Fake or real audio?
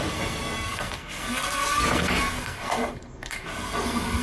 fake